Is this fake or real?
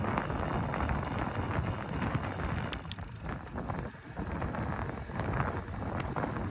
real